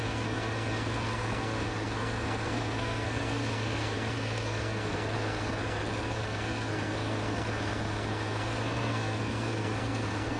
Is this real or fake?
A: fake